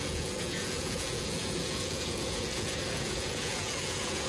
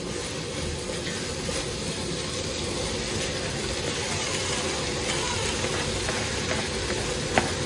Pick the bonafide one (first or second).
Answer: second